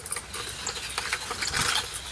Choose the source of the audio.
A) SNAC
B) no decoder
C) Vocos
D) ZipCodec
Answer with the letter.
B